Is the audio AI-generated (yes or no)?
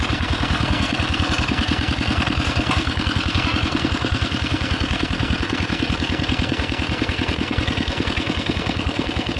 yes